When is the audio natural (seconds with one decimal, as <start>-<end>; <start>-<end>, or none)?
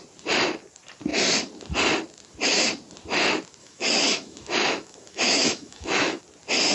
0.0-3.6; 6.2-6.7